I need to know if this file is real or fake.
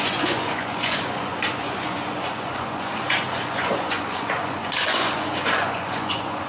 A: fake